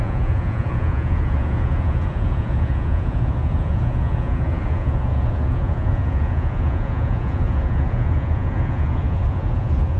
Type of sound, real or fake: fake